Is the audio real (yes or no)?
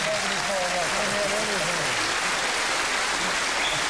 yes